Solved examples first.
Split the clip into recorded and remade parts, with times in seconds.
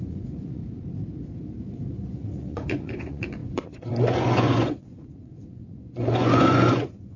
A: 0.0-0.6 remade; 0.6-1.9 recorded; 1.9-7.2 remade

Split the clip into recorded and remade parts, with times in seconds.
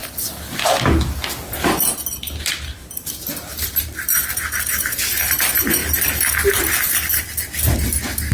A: 0.0-2.8 recorded; 2.8-3.8 remade; 3.8-8.3 recorded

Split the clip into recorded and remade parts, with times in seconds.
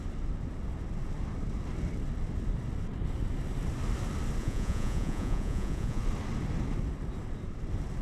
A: 0.0-4.4 recorded; 4.4-6.0 remade; 6.0-8.0 recorded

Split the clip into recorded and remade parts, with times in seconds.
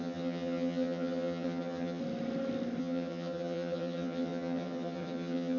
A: 0.0-2.0 remade; 2.0-2.8 recorded; 2.8-5.6 remade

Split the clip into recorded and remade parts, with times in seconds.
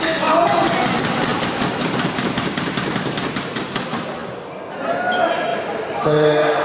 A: 0.0-1.3 recorded; 1.3-2.9 remade; 2.9-5.5 recorded; 5.5-6.6 remade